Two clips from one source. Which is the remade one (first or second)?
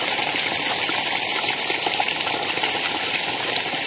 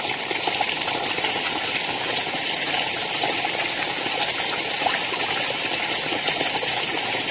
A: second